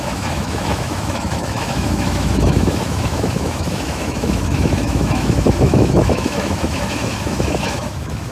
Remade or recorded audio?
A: remade